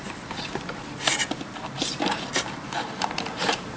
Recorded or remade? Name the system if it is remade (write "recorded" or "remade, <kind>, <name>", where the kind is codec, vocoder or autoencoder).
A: remade, vocoder, BigVGAN v2